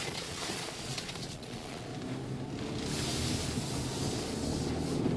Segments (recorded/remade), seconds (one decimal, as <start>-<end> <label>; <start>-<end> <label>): 0.0-1.9 remade; 1.9-5.2 recorded